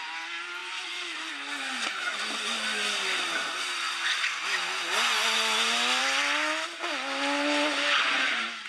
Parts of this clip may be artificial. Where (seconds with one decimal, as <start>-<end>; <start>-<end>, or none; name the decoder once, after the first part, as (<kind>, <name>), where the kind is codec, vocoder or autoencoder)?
none